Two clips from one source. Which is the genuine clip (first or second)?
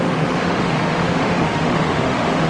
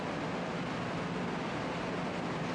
second